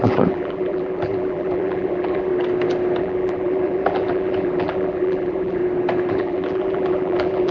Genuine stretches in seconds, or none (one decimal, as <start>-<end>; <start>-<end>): 2.3-3.0; 5.6-6.1